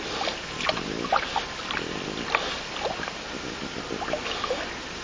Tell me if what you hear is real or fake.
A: real